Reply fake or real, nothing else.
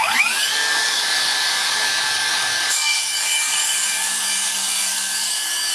fake